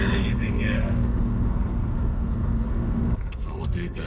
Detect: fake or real fake